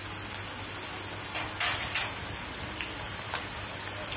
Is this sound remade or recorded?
recorded